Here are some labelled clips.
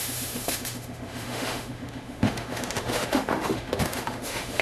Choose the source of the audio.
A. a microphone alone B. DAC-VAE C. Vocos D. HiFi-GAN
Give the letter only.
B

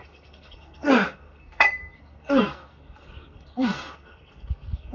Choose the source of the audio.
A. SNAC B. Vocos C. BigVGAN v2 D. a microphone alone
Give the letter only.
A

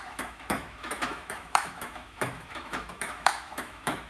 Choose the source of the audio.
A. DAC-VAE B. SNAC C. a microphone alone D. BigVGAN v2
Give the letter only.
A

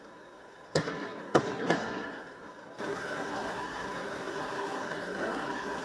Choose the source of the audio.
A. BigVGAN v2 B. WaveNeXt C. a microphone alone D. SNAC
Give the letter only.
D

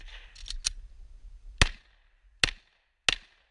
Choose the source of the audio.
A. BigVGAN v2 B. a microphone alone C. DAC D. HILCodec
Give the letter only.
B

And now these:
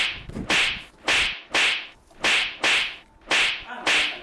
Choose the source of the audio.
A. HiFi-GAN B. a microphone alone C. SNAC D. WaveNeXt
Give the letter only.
B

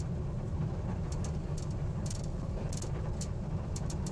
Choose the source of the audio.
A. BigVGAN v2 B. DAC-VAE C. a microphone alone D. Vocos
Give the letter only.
A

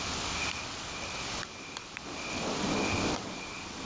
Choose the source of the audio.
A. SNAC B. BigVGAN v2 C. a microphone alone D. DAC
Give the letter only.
C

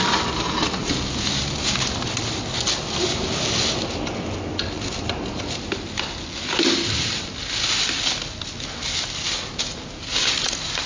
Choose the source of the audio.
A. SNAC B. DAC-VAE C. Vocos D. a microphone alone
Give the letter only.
D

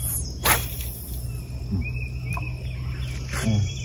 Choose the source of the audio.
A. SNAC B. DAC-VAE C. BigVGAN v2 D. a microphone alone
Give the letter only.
D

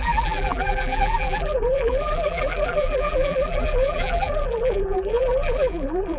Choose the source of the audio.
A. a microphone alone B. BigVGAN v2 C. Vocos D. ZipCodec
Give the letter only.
B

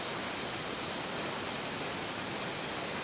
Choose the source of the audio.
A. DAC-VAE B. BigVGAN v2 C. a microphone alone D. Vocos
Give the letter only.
C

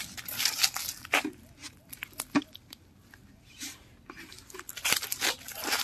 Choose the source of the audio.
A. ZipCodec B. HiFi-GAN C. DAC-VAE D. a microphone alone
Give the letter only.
D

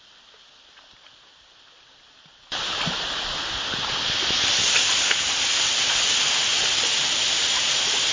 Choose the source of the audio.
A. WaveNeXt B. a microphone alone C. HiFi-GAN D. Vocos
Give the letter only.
B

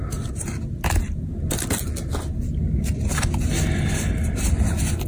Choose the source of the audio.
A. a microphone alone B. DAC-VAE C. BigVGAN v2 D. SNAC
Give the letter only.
A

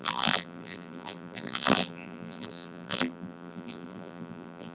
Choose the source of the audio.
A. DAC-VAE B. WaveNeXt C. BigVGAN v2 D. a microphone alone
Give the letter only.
C